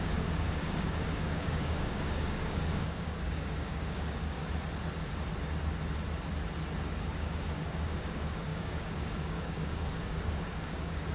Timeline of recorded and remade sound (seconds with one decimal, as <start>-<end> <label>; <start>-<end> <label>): 0.0-4.4 remade; 4.4-7.1 recorded; 7.1-11.1 remade